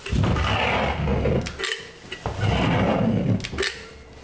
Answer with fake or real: real